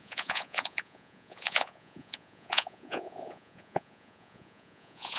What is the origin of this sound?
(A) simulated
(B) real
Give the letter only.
A